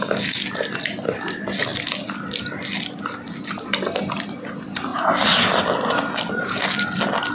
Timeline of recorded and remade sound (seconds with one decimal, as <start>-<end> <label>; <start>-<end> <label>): 0.0-7.3 recorded